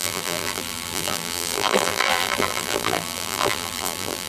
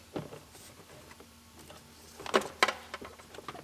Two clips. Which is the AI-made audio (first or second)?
first